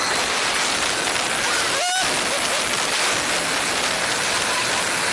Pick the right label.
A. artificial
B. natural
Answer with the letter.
B